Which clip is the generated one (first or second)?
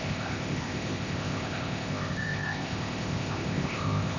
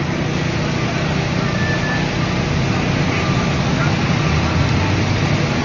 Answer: first